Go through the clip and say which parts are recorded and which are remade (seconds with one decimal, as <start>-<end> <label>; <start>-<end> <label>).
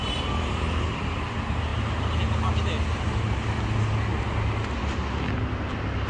0.0-6.1 recorded